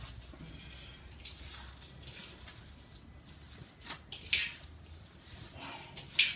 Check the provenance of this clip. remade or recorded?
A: recorded